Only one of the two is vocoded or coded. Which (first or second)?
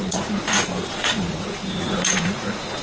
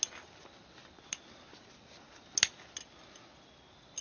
first